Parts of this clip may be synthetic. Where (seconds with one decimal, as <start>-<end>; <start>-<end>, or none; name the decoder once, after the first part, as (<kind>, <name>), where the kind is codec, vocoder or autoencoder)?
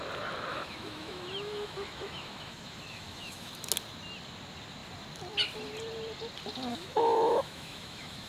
0.5-3.5 (autoencoder, DAC-VAE); 6.7-8.3